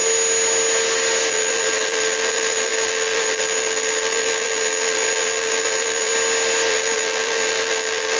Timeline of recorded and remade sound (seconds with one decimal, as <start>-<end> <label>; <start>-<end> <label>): 0.0-1.3 recorded; 1.3-6.1 remade; 6.1-6.7 recorded; 6.7-8.2 remade